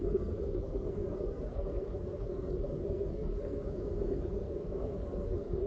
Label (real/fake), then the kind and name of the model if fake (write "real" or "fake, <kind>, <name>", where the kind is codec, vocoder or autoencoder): fake, codec, SNAC